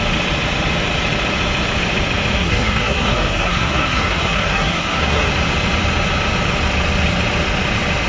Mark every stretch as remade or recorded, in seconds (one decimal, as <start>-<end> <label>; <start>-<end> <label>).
0.0-2.3 recorded; 2.3-5.3 remade; 5.3-8.1 recorded